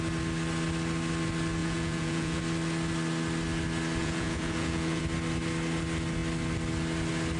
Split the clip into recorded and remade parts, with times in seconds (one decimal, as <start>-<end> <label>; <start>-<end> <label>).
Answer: 0.0-1.6 recorded; 1.6-2.4 remade; 2.4-4.0 recorded; 4.0-5.0 remade; 5.0-7.4 recorded